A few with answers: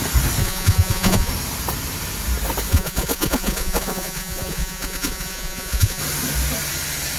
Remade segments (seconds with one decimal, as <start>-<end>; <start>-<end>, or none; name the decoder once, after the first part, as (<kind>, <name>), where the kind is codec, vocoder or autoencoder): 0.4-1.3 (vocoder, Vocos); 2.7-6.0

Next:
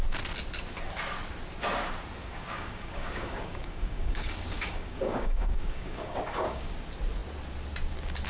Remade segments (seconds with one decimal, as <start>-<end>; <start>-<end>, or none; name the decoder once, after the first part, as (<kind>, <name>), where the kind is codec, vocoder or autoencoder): 2.2-6.7 (codec, DAC)

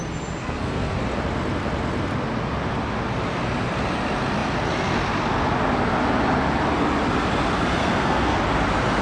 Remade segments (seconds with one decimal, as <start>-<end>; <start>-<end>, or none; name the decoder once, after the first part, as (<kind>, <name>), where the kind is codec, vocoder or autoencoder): 0.4-1.0 (codec, SNAC); 7.8-8.4

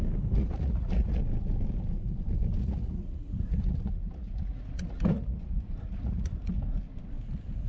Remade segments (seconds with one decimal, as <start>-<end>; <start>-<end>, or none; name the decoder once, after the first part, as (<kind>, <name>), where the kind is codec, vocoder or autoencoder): 0.4-1.2 (vocoder, Vocos); 2.6-6.5

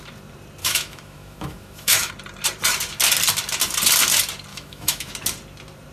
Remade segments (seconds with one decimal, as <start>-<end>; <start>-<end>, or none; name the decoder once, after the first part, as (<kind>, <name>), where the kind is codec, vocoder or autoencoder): 0.6-2.1 (autoencoder, DAC-VAE); 4.5-5.1

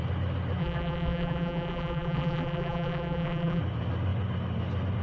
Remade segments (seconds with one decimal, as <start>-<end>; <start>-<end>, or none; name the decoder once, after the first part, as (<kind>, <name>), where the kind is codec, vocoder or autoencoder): 0.6-3.6 (vocoder, BigVGAN v2)

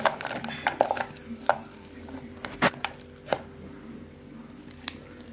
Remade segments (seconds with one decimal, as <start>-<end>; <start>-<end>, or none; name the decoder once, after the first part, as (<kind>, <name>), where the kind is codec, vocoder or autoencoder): 1.2-4.4 (vocoder, BigVGAN v2)